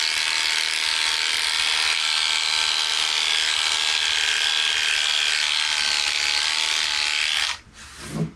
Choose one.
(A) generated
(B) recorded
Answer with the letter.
B